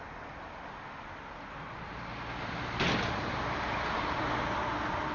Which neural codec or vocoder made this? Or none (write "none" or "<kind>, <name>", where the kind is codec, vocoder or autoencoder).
none